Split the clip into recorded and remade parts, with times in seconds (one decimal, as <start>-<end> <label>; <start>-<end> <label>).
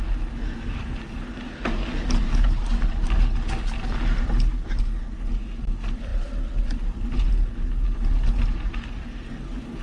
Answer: 0.0-9.8 recorded